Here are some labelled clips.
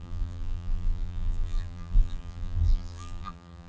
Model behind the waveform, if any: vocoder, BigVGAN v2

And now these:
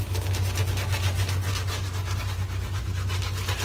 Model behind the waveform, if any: none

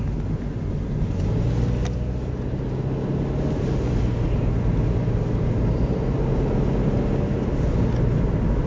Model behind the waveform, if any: none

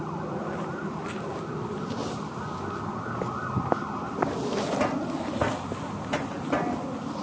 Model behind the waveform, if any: none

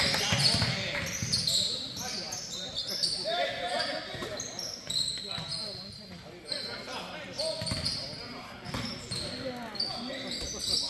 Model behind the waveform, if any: none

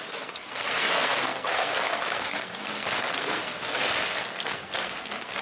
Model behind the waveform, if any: codec, SNAC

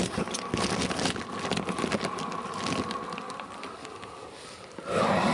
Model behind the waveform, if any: vocoder, BigVGAN v2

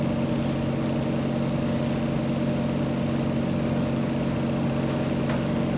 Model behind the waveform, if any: none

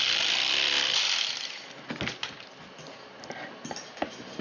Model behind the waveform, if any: none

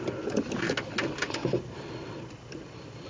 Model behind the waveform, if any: none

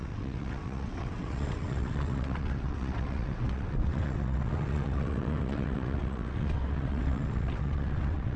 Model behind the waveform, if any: vocoder, WaveNeXt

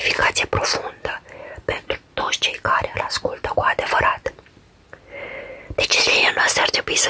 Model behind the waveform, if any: none